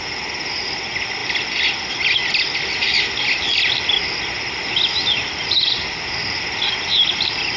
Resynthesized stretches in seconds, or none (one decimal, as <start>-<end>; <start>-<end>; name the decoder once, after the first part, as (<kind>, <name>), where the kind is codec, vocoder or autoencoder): 4.0-7.6 (vocoder, BigVGAN v2)